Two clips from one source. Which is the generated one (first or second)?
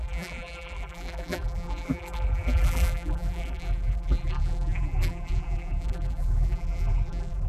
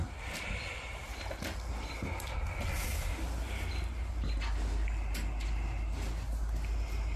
first